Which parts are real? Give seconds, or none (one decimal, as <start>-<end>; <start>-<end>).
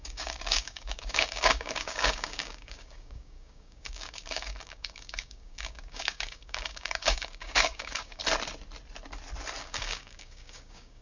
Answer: 8.2-9.6